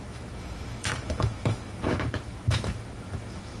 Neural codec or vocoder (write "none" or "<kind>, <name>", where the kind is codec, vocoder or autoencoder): autoencoder, DAC-VAE